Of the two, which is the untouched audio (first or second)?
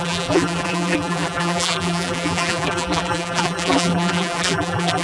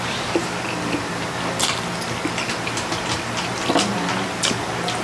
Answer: second